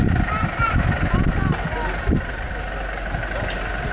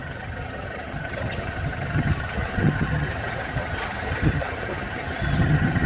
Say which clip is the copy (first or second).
second